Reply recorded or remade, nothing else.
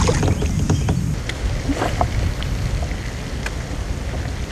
recorded